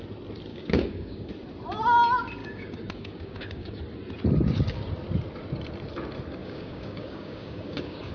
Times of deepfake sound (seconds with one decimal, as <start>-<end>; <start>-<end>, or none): 0.5-1.3; 2.4-3.8; 6.4-8.1